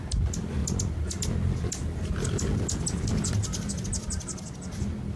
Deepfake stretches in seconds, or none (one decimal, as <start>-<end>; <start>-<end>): none